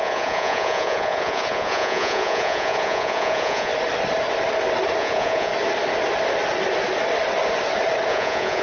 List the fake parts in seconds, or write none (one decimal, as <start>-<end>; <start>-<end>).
0.0-3.7; 5.0-5.5; 8.1-8.6